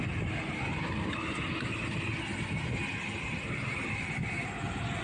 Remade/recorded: recorded